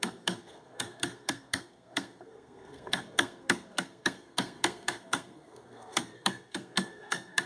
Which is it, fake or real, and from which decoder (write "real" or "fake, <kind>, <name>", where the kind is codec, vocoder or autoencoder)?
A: fake, codec, SNAC